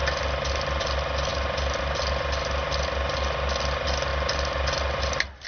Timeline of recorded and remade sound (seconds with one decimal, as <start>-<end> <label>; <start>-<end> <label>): 0.0-5.5 recorded